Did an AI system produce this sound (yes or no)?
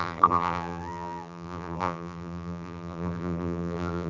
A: yes